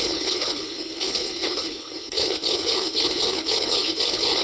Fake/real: fake